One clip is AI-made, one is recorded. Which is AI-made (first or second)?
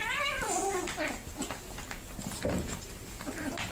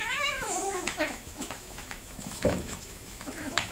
second